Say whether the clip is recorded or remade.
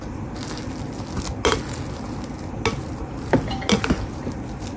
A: recorded